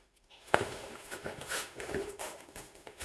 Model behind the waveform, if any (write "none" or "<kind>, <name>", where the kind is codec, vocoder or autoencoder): autoencoder, DAC-VAE